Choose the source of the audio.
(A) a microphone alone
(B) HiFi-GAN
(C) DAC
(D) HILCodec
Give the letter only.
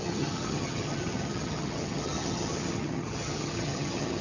B